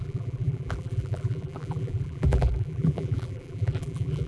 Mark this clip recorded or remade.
remade